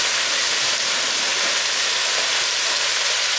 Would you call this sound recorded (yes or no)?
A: no